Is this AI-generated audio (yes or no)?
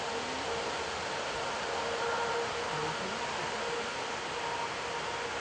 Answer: no